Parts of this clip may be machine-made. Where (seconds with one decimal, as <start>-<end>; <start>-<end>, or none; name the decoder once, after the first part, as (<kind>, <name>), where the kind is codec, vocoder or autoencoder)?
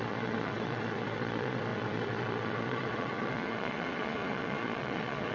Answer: 0.0-5.3 (vocoder, Vocos)